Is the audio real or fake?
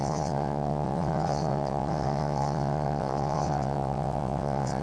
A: fake